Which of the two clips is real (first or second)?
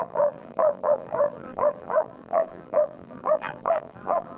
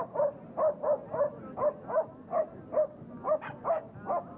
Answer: second